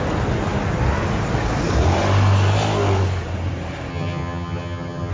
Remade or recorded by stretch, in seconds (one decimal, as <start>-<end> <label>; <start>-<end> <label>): 0.0-3.9 recorded; 3.9-5.1 remade